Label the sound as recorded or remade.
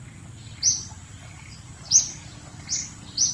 recorded